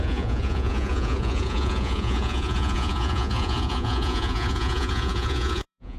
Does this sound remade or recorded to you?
remade